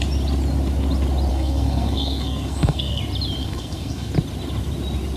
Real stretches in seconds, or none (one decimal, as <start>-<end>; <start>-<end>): 0.0-1.3; 3.0-3.4; 4.1-5.2